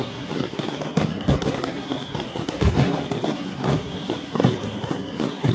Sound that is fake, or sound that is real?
fake